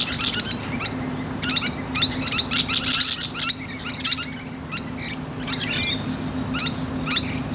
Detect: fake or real real